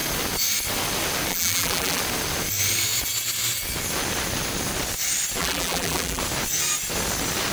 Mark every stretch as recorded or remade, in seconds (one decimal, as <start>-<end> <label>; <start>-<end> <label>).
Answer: 0.0-1.3 recorded; 1.3-2.0 remade; 2.0-5.4 recorded; 5.4-6.2 remade; 6.2-7.5 recorded